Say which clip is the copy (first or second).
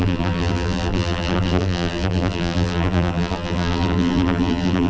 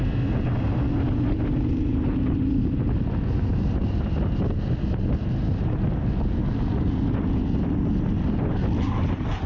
first